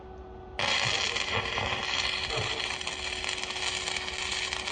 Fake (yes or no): no